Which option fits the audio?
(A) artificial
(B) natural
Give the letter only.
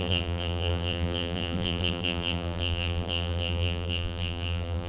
A